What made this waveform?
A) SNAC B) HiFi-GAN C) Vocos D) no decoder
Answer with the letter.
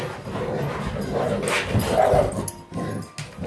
D